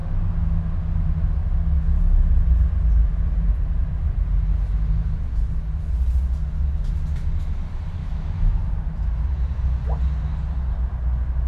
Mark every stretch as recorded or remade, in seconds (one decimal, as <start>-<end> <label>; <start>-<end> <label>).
0.0-8.0 recorded; 8.0-8.7 remade; 8.7-11.5 recorded